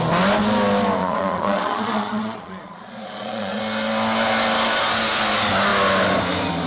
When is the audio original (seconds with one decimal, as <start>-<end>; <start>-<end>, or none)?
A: 0.0-1.0; 3.6-6.7